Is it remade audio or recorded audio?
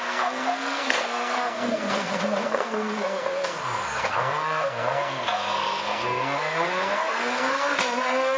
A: remade